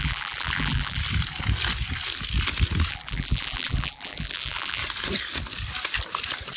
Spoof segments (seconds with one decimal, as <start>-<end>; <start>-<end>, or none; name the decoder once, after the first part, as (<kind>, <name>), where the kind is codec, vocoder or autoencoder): 0.0-1.0 (vocoder, BigVGAN v2); 2.9-4.8